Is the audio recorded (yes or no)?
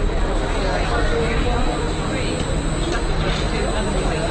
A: yes